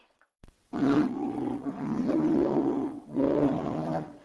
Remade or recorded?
remade